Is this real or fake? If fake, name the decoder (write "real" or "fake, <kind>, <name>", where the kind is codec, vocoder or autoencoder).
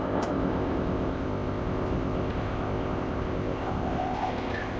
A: fake, codec, ZipCodec